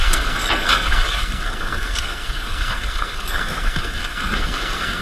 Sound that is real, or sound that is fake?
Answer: fake